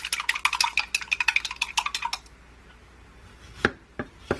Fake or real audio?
real